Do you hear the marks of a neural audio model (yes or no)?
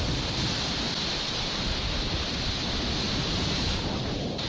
no